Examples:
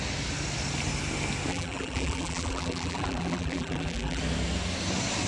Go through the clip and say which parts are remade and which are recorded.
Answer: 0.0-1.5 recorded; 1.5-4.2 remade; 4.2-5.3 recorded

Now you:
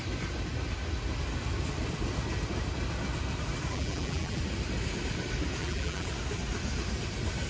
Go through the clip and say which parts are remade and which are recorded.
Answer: 0.0-3.7 recorded; 3.7-4.4 remade; 4.4-5.6 recorded; 5.6-6.1 remade; 6.1-7.5 recorded

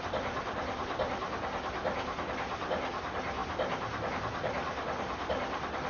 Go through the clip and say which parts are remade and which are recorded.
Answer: 0.0-5.9 recorded

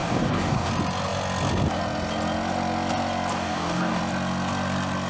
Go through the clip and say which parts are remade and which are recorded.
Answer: 0.0-0.7 remade; 0.7-3.3 recorded; 3.3-4.0 remade; 4.0-5.1 recorded